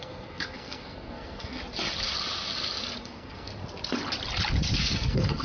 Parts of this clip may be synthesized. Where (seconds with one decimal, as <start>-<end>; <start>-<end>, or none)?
0.0-1.6; 3.0-3.5; 4.8-5.4